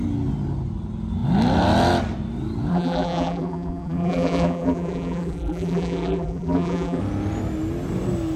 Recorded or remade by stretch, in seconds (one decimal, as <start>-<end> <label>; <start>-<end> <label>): 0.0-2.7 recorded; 2.7-7.0 remade; 7.0-8.4 recorded